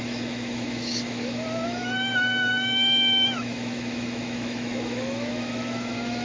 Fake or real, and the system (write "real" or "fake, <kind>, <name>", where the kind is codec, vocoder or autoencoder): fake, autoencoder, DAC-VAE